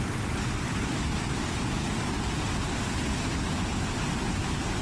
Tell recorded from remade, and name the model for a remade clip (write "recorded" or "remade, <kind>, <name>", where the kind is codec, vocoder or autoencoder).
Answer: recorded